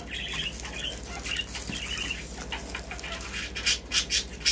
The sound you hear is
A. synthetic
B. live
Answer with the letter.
B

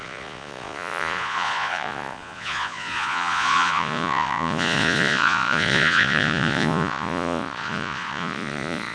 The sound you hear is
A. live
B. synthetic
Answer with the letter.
B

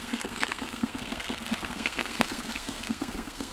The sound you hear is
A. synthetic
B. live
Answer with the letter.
A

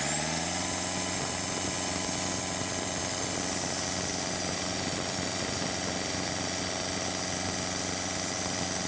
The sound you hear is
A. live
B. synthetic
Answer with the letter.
A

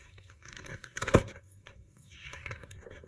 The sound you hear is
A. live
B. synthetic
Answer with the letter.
B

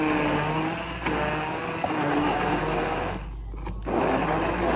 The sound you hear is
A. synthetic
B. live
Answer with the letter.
B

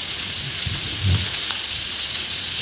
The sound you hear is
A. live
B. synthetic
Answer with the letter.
B